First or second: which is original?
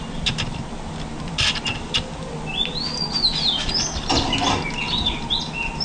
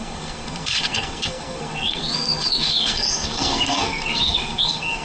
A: first